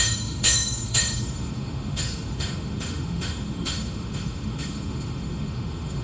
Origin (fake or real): fake